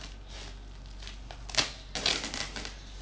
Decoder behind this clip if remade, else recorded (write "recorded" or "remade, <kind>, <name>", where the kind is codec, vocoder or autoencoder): recorded